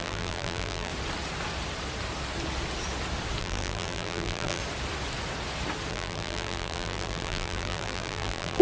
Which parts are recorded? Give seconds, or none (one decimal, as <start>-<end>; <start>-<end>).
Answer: 0.9-3.4; 4.6-5.9